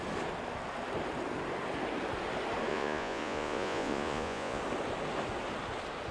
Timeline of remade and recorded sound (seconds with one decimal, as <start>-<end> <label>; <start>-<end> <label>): 0.0-2.7 recorded; 2.7-4.6 remade; 4.6-6.1 recorded